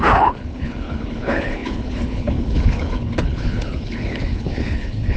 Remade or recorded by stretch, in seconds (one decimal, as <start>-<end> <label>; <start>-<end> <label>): 0.0-5.2 remade